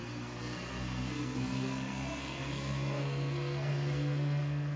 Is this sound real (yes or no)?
no